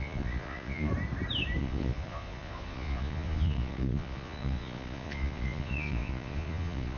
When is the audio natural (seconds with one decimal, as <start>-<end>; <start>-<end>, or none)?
0.9-1.6